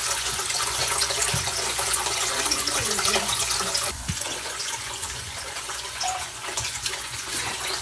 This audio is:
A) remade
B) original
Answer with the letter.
A